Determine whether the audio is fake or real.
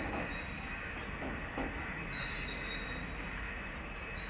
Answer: real